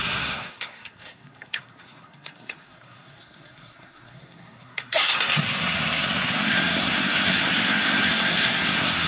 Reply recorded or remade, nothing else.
remade